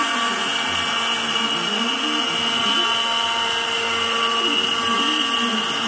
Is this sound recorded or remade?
recorded